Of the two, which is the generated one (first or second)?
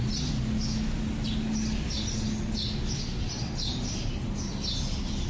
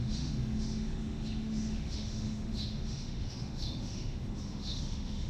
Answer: second